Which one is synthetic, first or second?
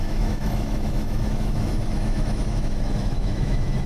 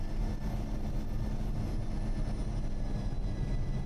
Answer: first